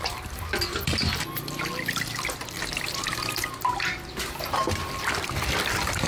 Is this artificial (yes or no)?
no